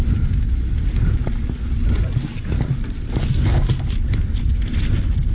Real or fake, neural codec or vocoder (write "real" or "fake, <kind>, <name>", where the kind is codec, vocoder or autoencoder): real